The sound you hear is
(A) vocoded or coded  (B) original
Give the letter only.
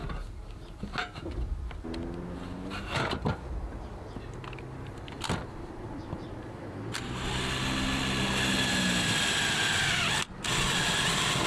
B